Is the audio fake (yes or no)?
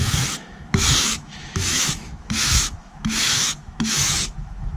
yes